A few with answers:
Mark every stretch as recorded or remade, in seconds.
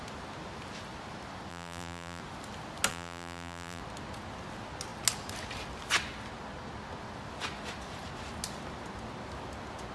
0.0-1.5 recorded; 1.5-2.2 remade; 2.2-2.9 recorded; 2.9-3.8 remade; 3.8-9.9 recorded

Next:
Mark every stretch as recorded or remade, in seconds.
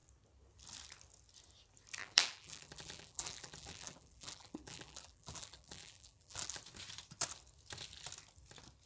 0.0-2.0 recorded; 2.0-6.6 remade; 6.6-8.9 recorded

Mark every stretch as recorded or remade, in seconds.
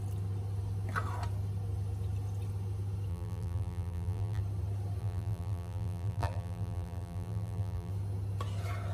0.0-3.1 recorded; 3.1-4.4 remade; 4.4-5.0 recorded; 5.0-7.9 remade; 7.9-8.9 recorded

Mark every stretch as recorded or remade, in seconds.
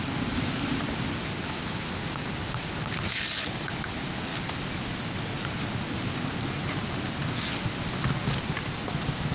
0.0-4.3 recorded; 4.3-5.0 remade; 5.0-9.3 recorded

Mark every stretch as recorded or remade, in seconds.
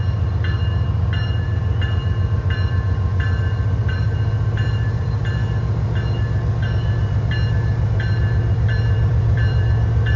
0.0-5.4 remade; 5.4-6.2 recorded; 6.2-10.2 remade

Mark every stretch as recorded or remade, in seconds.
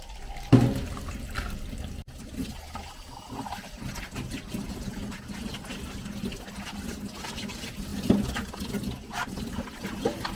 0.0-10.4 recorded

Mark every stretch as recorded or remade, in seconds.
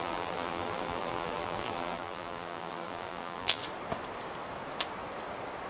0.0-3.6 remade; 3.6-5.7 recorded